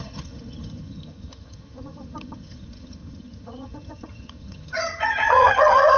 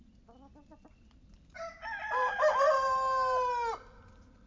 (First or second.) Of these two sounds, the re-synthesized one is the first